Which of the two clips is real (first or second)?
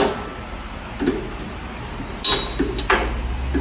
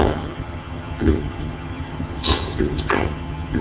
first